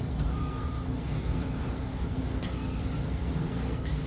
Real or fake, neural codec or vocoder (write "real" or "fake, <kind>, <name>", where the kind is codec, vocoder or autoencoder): fake, codec, SNAC